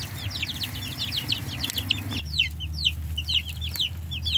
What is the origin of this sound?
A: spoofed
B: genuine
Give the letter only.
B